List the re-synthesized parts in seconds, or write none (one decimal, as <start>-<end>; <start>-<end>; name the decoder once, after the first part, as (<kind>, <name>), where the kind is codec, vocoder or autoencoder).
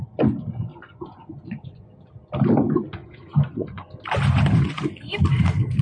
0.7-1.9 (vocoder, Vocos); 3.0-3.9